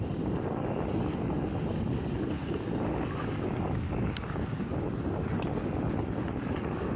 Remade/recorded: recorded